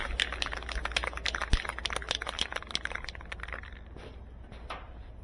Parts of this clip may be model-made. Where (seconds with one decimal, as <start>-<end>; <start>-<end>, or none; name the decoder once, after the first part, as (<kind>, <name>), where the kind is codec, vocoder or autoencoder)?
none